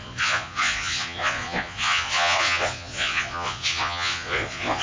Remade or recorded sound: remade